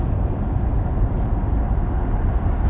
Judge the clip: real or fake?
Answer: real